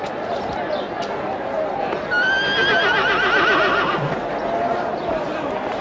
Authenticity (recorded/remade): recorded